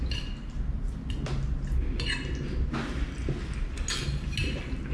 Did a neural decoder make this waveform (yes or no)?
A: no